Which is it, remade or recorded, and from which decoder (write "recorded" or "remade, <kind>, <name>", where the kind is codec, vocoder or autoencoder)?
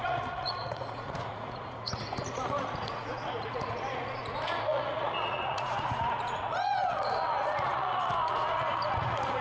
remade, vocoder, Vocos